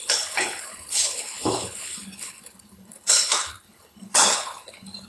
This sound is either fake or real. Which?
fake